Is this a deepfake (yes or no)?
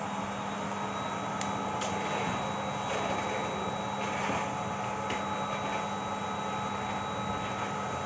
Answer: no